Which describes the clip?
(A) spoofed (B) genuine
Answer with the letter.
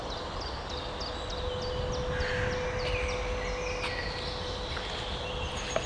B